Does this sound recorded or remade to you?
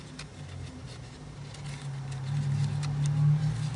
recorded